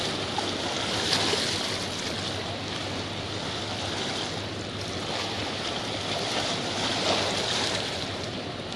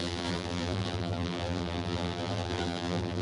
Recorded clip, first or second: first